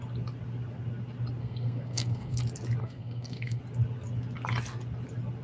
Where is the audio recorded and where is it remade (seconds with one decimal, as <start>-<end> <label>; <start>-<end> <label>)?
0.0-1.4 recorded; 1.4-2.4 remade; 2.4-2.8 recorded; 2.8-3.6 remade; 3.6-5.4 recorded